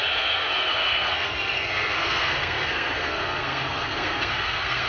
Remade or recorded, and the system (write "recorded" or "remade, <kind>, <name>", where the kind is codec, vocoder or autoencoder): remade, codec, SNAC